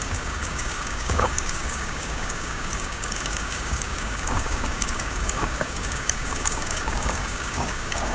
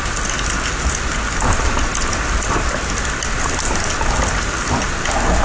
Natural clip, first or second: second